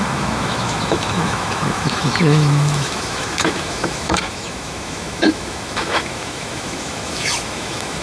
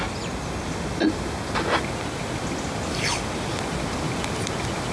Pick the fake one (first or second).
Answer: first